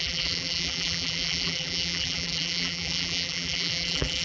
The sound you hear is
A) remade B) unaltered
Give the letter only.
A